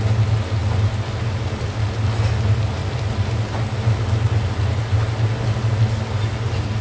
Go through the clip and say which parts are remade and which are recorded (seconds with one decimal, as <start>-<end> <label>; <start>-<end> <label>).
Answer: 0.0-6.8 recorded